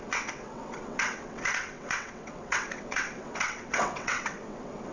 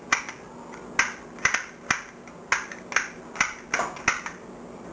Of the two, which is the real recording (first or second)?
second